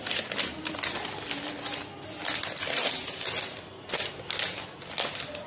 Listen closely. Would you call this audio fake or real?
real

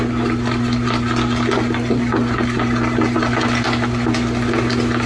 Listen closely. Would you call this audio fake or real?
real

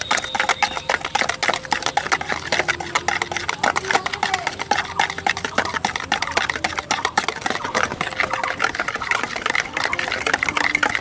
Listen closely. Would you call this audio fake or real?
real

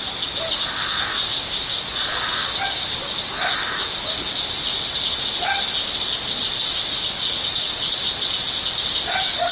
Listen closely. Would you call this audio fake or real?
real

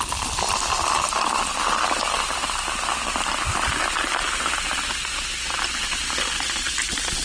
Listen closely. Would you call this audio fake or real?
real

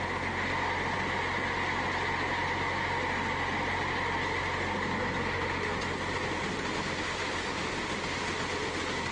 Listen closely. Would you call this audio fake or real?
real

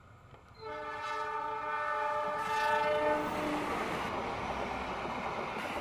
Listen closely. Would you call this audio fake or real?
real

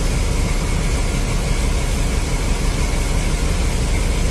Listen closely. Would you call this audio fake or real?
real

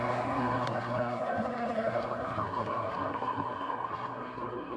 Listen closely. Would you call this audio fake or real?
fake